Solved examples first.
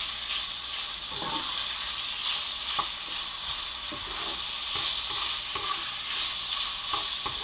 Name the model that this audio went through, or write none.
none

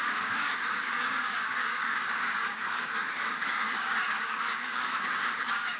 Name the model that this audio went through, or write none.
codec, DAC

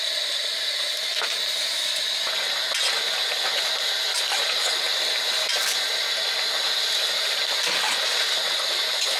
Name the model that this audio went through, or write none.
none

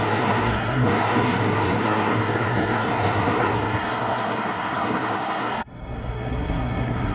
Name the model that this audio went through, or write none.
codec, SNAC